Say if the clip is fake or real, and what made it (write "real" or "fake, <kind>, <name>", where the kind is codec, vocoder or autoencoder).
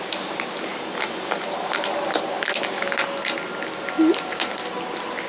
real